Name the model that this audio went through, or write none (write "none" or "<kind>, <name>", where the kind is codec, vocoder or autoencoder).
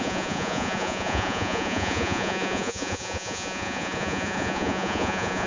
vocoder, Vocos